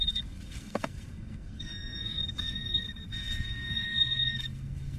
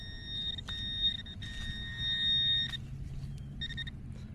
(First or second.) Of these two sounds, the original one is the second